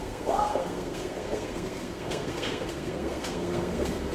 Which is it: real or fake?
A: fake